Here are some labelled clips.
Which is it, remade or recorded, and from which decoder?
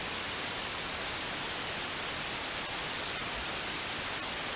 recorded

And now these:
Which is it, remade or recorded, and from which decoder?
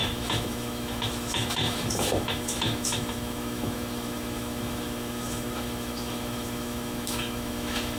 remade, autoencoder, DAC-VAE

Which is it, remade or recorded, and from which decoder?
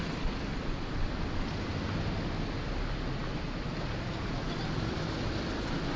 recorded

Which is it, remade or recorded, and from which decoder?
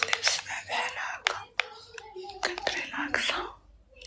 recorded